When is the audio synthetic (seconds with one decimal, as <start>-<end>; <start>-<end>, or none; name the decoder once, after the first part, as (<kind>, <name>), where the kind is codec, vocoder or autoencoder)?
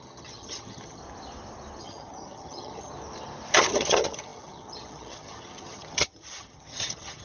0.0-1.0 (vocoder, HiFi-GAN); 1.8-2.9; 3.6-7.2